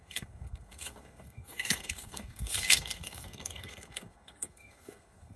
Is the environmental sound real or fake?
fake